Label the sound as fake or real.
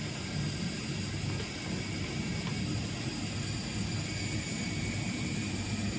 real